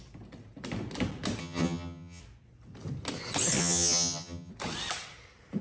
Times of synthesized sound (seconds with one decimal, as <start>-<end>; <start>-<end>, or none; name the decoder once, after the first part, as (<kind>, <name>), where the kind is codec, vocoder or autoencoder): 1.4-2.2 (vocoder, HiFi-GAN); 3.6-4.5